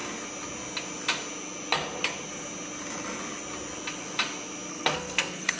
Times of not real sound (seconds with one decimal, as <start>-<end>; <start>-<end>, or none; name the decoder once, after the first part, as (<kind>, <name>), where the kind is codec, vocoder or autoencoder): 4.7-5.6 (codec, SNAC)